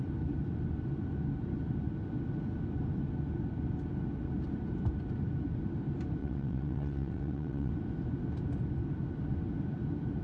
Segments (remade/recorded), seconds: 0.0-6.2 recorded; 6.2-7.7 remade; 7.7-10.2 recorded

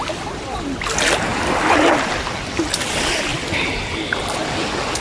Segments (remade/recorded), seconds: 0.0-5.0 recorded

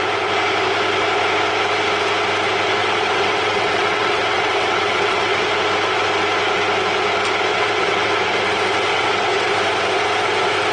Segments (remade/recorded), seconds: 0.0-2.8 recorded; 2.8-5.4 remade; 5.4-7.5 recorded; 7.5-8.1 remade; 8.1-8.9 recorded; 8.9-9.5 remade; 9.5-10.7 recorded

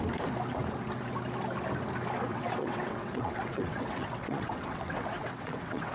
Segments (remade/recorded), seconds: 0.0-2.3 recorded; 2.3-5.9 remade

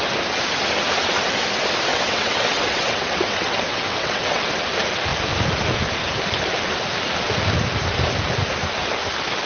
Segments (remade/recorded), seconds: 0.0-1.9 recorded; 1.9-4.5 remade; 4.5-9.5 recorded

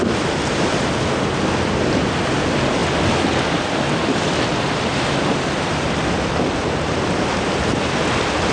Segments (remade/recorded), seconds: 0.0-8.5 recorded